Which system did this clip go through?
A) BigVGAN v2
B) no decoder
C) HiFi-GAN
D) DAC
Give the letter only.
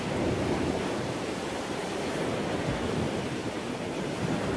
A